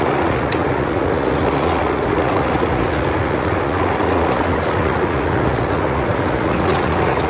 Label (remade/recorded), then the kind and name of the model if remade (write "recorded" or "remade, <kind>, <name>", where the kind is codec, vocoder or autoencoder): remade, vocoder, Vocos